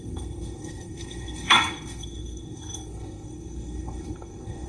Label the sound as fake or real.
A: fake